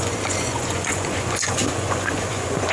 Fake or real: fake